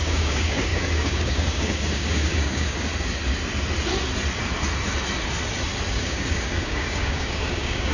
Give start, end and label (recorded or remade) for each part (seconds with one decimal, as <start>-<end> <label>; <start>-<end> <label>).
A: 0.0-2.9 remade; 2.9-5.9 recorded; 5.9-7.9 remade